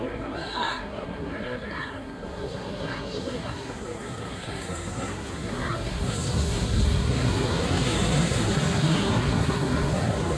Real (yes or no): no